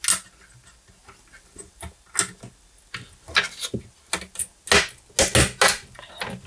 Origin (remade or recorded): recorded